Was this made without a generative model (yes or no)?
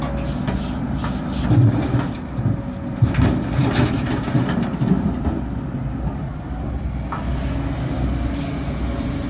yes